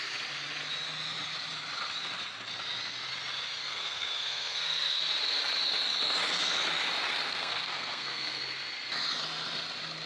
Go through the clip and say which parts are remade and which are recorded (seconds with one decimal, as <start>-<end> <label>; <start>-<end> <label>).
0.0-3.6 recorded; 3.6-5.0 remade; 5.0-7.2 recorded; 7.2-8.4 remade; 8.4-10.1 recorded